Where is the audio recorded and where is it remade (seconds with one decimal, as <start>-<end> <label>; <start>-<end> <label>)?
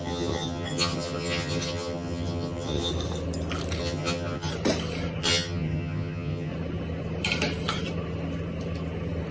0.0-2.9 remade; 2.9-3.8 recorded; 3.8-4.5 remade; 4.5-5.2 recorded; 5.2-6.5 remade; 6.5-9.3 recorded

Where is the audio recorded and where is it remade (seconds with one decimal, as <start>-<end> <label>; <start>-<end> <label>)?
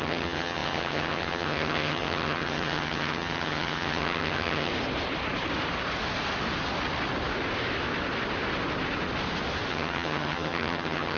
0.0-4.7 remade; 4.7-9.7 recorded; 9.7-11.2 remade